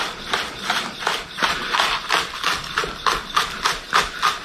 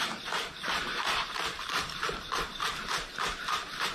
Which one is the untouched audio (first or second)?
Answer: first